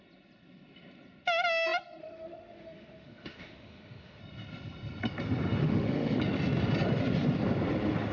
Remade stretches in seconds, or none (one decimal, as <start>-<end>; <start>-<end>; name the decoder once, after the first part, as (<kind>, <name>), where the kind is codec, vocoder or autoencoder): 2.0-4.2 (autoencoder, DAC-VAE); 5.6-6.2